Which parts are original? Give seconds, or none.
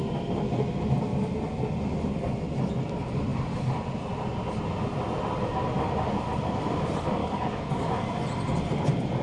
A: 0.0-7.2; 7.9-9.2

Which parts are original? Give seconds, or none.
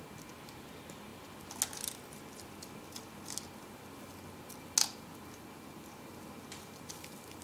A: 0.0-7.4